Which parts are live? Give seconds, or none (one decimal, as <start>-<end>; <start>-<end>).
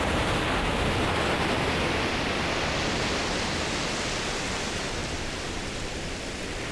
0.0-5.0; 6.2-6.7